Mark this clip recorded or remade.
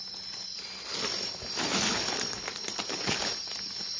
recorded